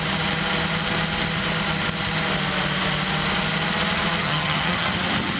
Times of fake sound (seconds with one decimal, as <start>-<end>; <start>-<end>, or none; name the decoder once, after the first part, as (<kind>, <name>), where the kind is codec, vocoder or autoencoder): 4.2-4.9 (vocoder, HiFi-GAN)